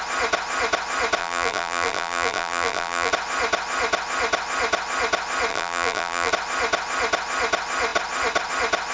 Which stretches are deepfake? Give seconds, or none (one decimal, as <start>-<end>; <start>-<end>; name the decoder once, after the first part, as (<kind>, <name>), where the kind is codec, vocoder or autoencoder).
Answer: 1.2-3.1 (vocoder, BigVGAN v2); 5.5-6.3